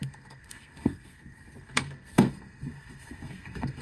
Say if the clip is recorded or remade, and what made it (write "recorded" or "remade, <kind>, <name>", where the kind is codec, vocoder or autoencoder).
remade, codec, SNAC